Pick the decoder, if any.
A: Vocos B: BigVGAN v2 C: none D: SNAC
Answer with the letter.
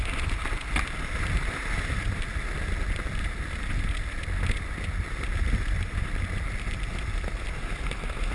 C